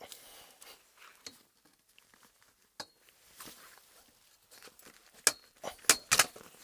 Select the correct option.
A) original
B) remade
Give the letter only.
A